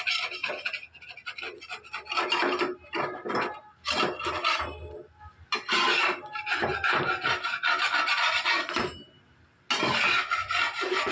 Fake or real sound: real